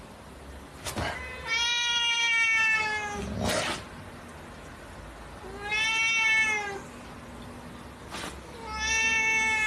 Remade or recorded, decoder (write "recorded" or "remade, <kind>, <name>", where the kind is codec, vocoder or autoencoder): recorded